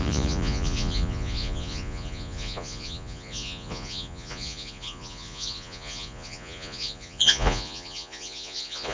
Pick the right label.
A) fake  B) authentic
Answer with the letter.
A